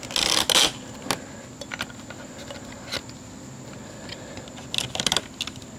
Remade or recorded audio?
recorded